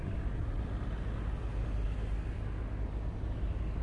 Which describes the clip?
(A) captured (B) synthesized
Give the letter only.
A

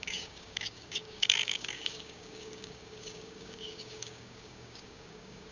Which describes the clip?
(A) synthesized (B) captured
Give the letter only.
A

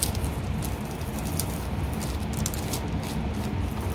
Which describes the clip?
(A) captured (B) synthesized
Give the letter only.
A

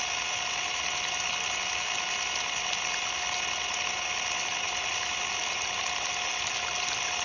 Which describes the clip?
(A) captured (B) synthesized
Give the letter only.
A